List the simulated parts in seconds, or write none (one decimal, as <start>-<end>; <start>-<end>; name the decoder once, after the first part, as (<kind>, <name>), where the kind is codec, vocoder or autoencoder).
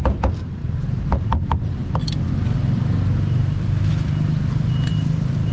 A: none